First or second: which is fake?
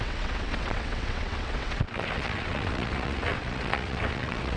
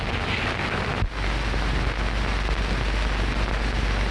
first